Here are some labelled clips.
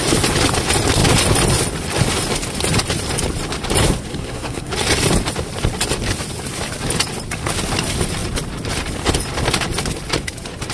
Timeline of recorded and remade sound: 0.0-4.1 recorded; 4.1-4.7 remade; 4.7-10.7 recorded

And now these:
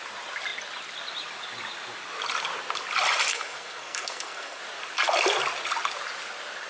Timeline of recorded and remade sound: 0.0-3.3 recorded; 3.3-4.6 remade; 4.6-6.7 recorded

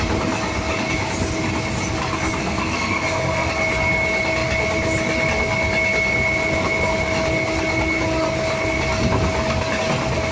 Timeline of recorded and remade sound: 0.0-2.4 recorded; 2.4-3.5 remade; 3.5-10.3 recorded

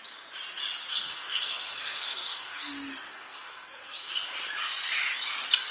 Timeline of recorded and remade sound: 0.0-0.9 recorded; 0.9-2.7 remade; 2.7-3.1 recorded; 3.1-4.3 remade; 4.3-5.7 recorded

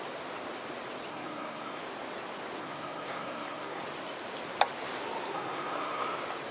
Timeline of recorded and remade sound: 0.0-1.1 recorded; 1.1-1.8 remade; 1.8-2.6 recorded; 2.6-3.8 remade; 3.8-5.3 recorded; 5.3-6.0 remade; 6.0-6.5 recorded

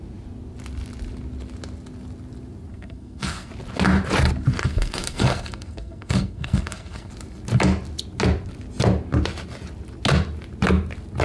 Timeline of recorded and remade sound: 0.0-2.7 recorded; 2.7-3.5 remade; 3.5-4.6 recorded; 4.6-7.1 remade; 7.1-11.2 recorded

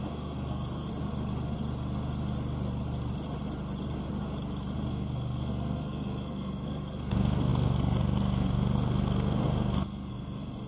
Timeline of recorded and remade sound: 0.0-0.9 remade; 0.9-4.9 recorded; 4.9-10.7 remade

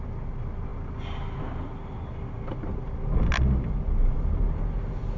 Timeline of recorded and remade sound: 0.0-5.2 recorded